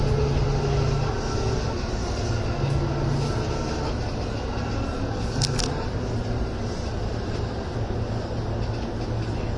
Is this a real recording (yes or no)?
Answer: yes